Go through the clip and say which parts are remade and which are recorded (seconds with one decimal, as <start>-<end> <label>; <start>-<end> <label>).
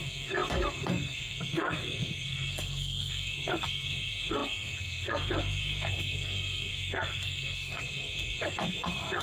0.0-9.2 remade